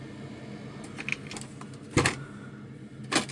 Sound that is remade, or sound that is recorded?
recorded